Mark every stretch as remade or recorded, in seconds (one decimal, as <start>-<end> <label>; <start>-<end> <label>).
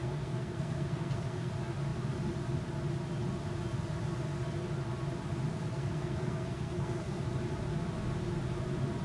0.0-1.5 remade; 1.5-5.5 recorded; 5.5-7.2 remade; 7.2-9.0 recorded